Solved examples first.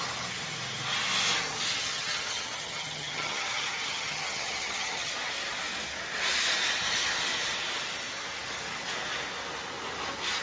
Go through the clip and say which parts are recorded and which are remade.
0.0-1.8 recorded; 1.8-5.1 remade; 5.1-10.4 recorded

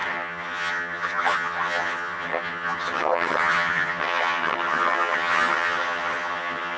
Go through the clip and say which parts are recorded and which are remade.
0.0-6.8 remade

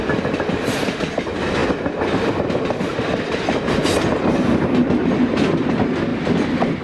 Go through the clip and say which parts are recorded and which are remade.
0.0-1.6 recorded; 1.6-4.3 remade; 4.3-6.1 recorded; 6.1-6.8 remade

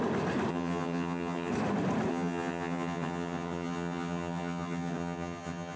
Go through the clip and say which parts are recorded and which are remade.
0.0-0.5 recorded; 0.5-1.5 remade; 1.5-2.1 recorded; 2.1-5.8 remade

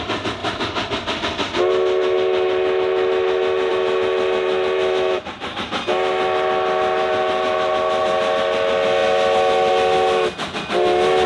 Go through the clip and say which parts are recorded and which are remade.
0.0-11.3 recorded

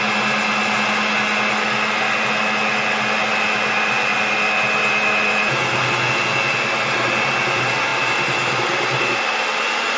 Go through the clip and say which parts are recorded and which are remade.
0.0-10.0 recorded

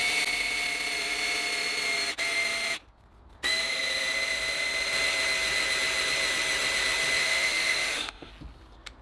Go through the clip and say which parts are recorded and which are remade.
0.0-7.2 recorded; 7.2-8.3 remade; 8.3-9.0 recorded